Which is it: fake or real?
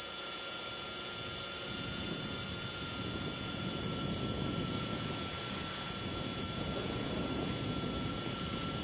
fake